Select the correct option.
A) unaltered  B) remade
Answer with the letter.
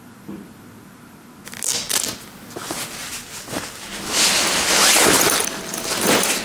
A